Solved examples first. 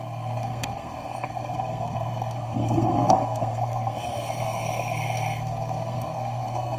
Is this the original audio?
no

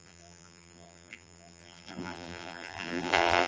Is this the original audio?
no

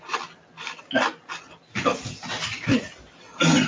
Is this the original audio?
yes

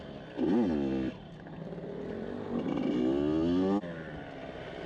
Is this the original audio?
yes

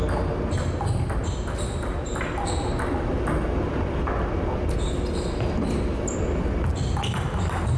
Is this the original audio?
yes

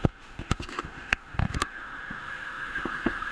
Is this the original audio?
no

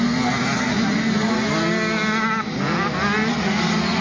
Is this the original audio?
yes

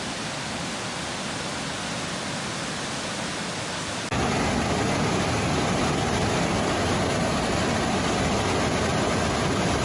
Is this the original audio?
yes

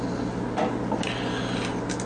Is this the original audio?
yes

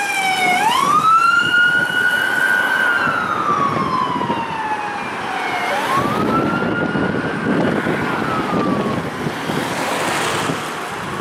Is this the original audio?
yes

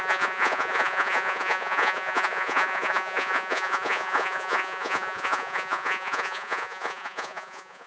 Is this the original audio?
no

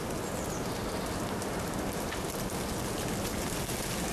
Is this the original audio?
yes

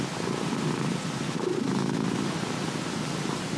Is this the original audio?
yes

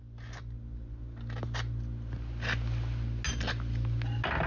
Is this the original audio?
yes